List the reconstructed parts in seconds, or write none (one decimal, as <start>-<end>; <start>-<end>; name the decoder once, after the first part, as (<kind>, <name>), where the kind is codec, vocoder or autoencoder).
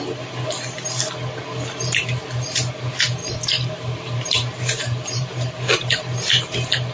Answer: 3.2-5.3 (vocoder, BigVGAN v2)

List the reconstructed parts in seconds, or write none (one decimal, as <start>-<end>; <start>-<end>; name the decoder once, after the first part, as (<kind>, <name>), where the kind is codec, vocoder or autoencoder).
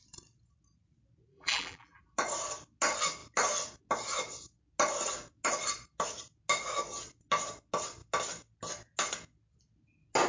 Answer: 1.3-2.0 (vocoder, BigVGAN v2)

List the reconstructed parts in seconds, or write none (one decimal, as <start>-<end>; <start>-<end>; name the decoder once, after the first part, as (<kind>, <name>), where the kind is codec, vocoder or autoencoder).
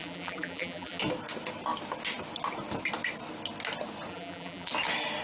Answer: 0.0-1.0 (vocoder, BigVGAN v2); 4.1-4.7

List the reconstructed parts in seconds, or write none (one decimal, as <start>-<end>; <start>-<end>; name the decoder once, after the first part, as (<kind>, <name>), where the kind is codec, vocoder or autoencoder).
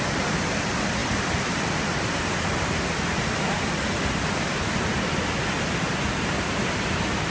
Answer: none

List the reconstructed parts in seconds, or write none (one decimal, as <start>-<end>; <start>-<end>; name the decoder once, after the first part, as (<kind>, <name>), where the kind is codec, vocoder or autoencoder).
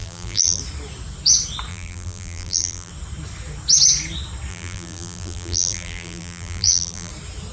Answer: 0.0-0.6 (vocoder, BigVGAN v2); 1.7-2.9; 4.5-7.1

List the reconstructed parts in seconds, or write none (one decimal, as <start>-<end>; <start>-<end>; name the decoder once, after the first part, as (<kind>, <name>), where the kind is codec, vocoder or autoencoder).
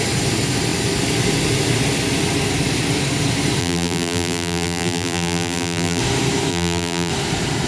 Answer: 3.6-6.0 (vocoder, BigVGAN v2); 6.5-7.1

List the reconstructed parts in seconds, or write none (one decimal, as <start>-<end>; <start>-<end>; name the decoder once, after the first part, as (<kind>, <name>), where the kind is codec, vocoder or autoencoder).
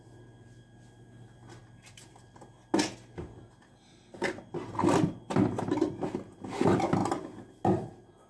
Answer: none